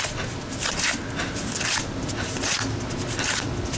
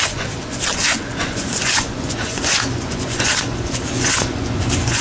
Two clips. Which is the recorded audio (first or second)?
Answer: first